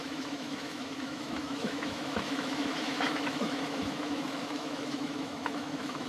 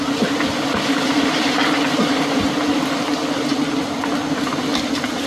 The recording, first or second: second